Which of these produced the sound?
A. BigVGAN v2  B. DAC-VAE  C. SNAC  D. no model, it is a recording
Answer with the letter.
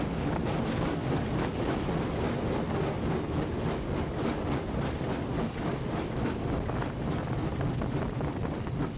D